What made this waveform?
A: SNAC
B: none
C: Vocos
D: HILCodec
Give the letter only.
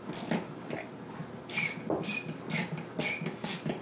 B